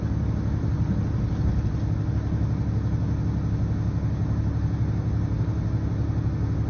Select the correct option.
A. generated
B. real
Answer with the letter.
B